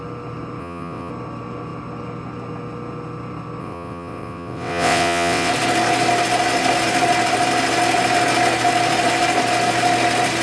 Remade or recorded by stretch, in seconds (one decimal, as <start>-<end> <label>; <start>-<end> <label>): 0.0-0.6 recorded; 0.6-1.1 remade; 1.1-3.6 recorded; 3.6-5.5 remade; 5.5-10.4 recorded